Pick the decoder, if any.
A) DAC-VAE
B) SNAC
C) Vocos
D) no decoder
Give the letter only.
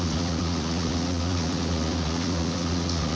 C